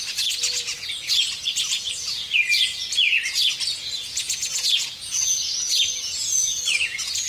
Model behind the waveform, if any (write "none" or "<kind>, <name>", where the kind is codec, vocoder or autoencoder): vocoder, Vocos